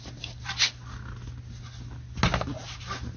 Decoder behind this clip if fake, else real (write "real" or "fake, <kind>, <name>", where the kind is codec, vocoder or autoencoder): real